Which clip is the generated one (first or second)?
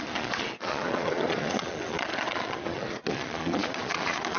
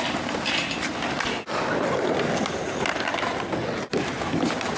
first